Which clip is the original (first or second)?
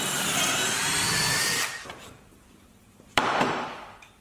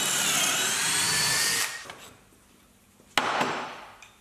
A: second